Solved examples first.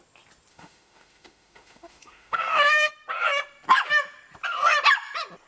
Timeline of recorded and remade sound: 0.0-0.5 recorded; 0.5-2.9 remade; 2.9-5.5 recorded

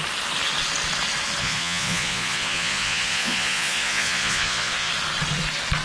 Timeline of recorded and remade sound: 0.0-1.4 recorded; 1.4-4.9 remade; 4.9-5.8 recorded

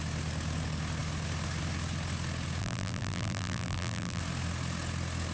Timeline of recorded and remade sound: 0.0-2.6 recorded; 2.6-4.2 remade; 4.2-5.3 recorded

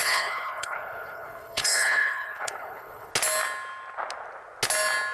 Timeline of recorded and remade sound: 0.0-3.1 remade; 3.1-5.1 recorded

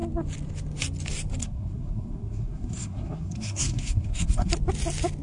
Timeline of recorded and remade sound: 0.0-1.4 recorded; 1.4-4.5 remade; 4.5-5.2 recorded

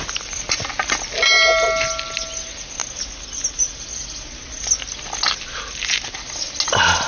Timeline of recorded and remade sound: 0.0-7.1 recorded

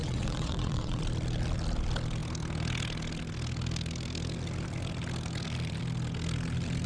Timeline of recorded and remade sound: 0.0-1.0 remade; 1.0-6.9 recorded

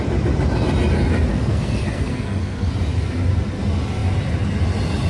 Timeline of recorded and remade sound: 0.0-1.3 recorded; 1.3-2.7 remade; 2.7-5.1 recorded